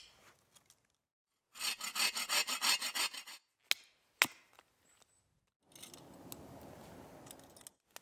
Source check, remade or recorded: recorded